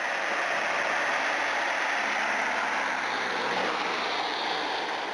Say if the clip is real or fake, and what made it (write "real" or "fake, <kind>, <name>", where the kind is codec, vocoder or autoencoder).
real